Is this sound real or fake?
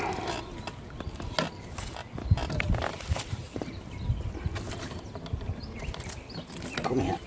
real